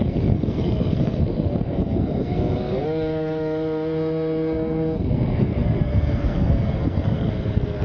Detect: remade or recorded remade